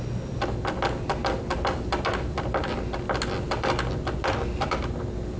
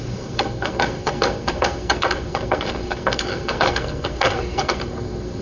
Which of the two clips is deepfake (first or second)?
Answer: second